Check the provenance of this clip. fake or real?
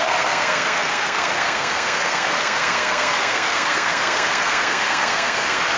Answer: fake